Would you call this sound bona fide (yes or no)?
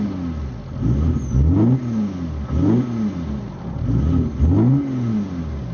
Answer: yes